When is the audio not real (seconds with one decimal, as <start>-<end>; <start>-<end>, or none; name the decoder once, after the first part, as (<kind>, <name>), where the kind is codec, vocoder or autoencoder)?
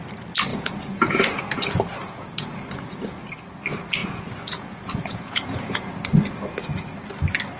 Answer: 0.5-1.4 (vocoder, Vocos); 2.0-3.2; 4.0-5.8